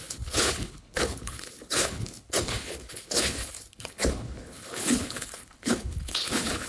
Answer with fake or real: fake